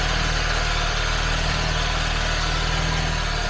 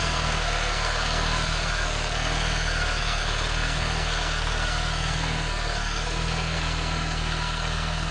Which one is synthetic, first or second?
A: second